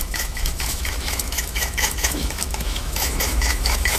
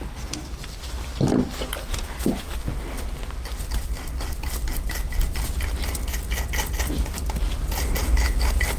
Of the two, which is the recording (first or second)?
second